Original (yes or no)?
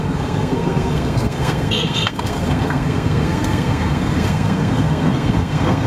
no